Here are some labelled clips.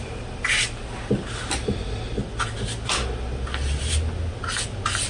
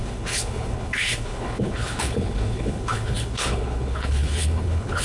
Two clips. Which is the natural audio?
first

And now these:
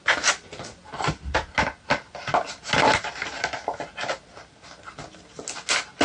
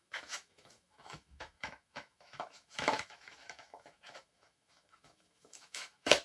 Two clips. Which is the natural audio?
first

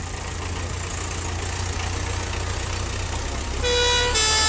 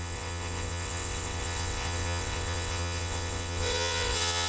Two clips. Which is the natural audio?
first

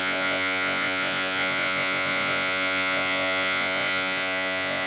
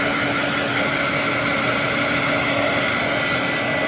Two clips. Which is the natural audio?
second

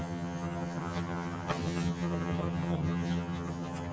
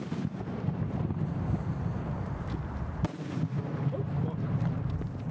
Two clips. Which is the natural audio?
second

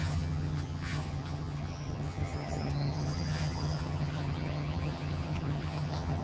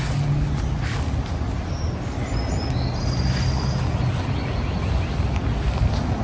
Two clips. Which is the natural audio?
second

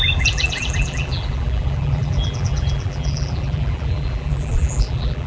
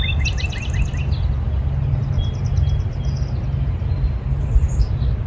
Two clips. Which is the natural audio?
second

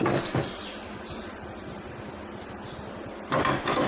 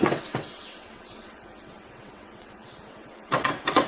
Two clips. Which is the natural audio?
first